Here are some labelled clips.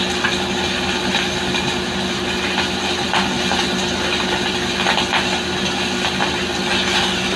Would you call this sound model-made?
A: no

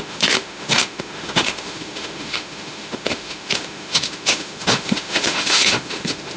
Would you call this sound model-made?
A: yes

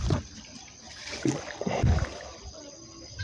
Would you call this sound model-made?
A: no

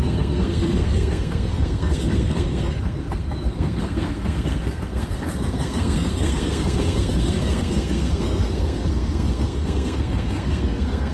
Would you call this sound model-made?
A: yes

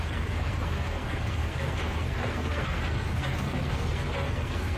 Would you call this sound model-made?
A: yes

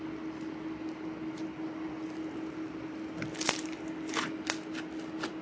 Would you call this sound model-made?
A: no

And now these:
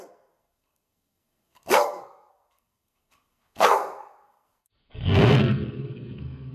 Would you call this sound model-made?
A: yes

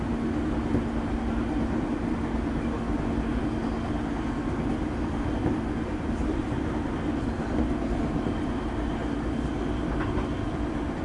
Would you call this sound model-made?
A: no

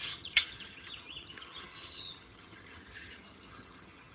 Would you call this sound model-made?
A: yes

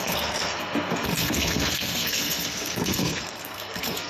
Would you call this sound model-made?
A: yes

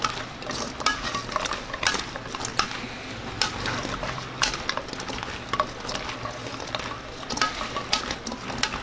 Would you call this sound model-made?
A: no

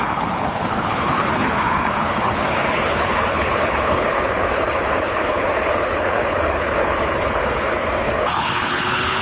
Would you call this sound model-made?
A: yes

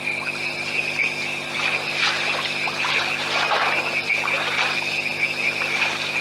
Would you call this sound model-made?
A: no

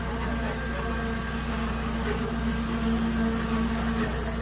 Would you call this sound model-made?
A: no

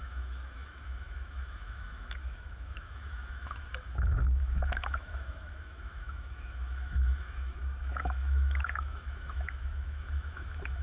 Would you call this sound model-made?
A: yes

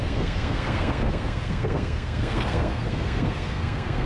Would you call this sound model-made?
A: yes